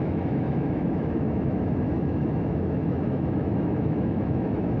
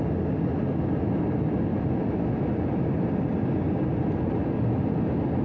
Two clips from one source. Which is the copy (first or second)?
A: first